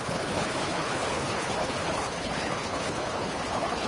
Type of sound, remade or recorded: remade